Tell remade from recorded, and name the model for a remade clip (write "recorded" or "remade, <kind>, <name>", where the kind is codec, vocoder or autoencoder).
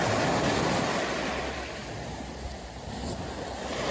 recorded